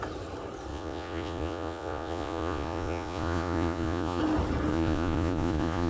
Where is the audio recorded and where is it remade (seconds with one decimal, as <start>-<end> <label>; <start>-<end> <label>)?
0.0-0.7 recorded; 0.7-4.2 remade; 4.2-4.7 recorded; 4.7-5.9 remade